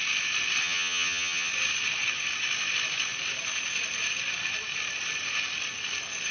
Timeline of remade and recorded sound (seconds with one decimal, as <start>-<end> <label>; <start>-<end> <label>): 0.0-0.6 recorded; 0.6-1.5 remade; 1.5-6.3 recorded